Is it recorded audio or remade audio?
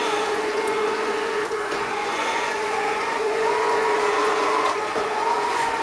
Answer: remade